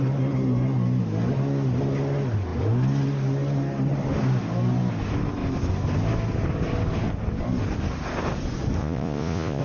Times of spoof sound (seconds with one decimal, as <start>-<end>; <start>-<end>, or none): 8.8-9.6